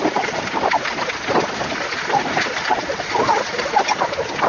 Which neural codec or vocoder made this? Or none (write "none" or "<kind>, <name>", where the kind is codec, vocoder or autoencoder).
none